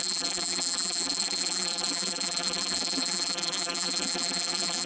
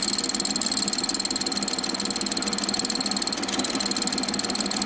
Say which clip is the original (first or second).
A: second